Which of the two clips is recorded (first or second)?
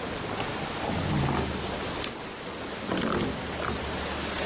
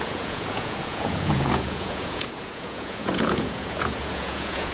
first